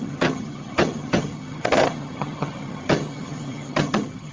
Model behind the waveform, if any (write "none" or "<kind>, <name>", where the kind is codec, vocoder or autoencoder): vocoder, HiFi-GAN